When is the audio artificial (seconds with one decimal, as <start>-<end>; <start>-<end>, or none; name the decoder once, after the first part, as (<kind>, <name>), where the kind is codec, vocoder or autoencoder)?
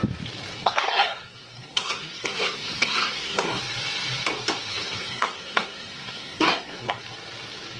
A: 0.5-3.6 (codec, SNAC); 4.7-7.0